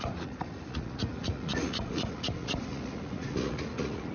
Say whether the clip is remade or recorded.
remade